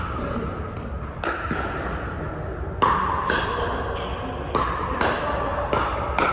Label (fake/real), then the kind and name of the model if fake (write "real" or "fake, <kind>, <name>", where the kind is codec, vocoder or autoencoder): real